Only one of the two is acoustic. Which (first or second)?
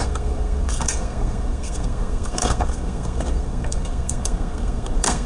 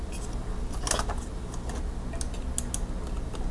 second